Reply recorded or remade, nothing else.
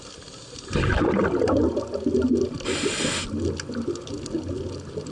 recorded